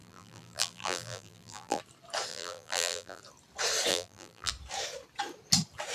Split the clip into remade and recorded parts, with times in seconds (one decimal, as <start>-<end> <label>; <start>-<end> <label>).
0.0-1.8 remade; 1.8-2.3 recorded; 2.3-3.2 remade; 3.2-3.9 recorded; 3.9-4.5 remade; 4.5-5.9 recorded